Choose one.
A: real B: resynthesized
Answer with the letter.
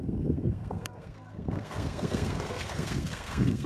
B